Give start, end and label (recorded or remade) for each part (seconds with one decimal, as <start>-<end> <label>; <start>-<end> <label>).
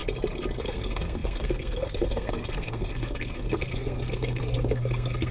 0.0-0.6 recorded; 0.6-5.3 remade